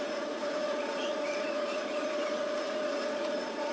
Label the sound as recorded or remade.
remade